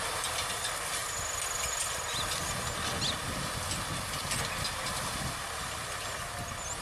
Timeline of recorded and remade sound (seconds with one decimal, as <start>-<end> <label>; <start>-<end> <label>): 0.0-6.8 recorded